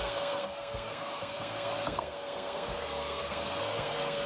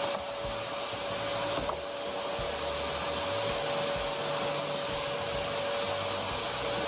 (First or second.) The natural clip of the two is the second